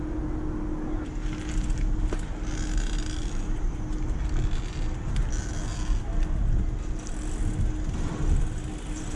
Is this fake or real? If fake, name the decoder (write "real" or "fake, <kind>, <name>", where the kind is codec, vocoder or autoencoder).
real